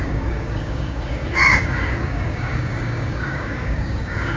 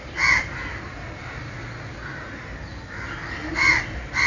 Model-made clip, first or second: first